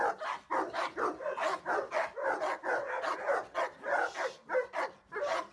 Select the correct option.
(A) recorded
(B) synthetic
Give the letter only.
A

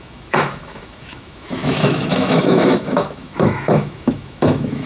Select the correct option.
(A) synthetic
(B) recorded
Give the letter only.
A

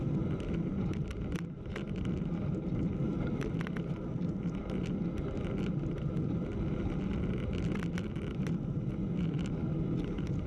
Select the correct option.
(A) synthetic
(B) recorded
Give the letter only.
B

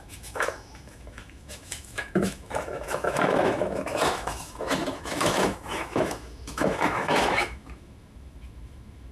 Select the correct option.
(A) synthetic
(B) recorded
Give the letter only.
A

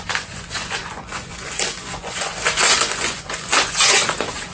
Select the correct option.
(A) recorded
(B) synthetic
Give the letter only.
B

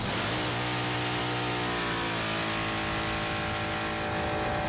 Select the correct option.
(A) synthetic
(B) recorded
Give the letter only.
B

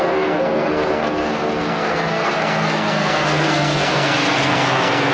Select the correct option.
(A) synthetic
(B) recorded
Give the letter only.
A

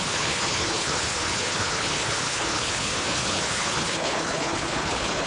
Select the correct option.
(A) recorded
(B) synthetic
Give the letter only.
B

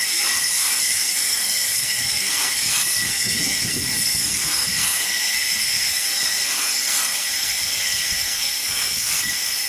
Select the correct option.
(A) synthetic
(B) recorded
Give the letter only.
A